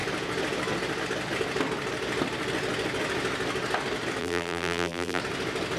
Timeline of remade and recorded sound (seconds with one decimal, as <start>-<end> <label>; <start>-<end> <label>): 0.0-4.2 recorded; 4.2-5.2 remade; 5.2-5.8 recorded